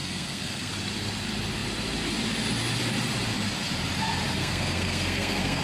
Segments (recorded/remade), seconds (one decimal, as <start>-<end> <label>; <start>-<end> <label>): 0.0-0.7 remade; 0.7-4.4 recorded; 4.4-5.6 remade